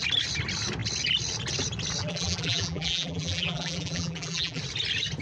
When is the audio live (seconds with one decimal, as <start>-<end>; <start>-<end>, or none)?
0.0-2.0; 4.6-5.2